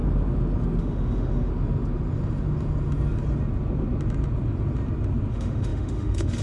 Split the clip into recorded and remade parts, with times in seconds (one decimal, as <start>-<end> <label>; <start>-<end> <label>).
0.0-0.8 recorded; 0.8-1.5 remade; 1.5-5.3 recorded; 5.3-6.4 remade